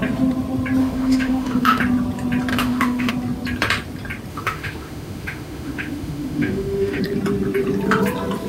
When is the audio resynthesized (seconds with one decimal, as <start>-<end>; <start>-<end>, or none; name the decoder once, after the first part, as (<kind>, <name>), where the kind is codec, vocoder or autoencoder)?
0.8-1.8 (autoencoder, DAC-VAE); 2.5-3.1; 4.3-7.0

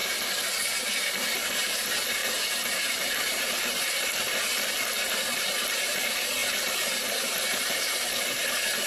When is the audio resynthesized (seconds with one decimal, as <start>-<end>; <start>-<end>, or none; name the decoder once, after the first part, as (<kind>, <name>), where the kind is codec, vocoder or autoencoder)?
2.2-3.5 (vocoder, BigVGAN v2); 6.4-7.9

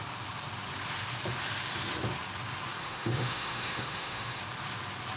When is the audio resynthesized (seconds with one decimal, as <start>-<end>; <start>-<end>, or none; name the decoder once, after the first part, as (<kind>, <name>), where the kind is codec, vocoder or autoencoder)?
2.8-4.4 (autoencoder, DAC-VAE)